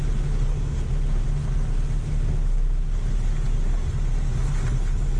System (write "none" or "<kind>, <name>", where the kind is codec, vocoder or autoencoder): none